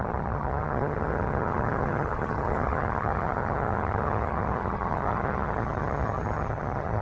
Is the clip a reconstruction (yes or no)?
yes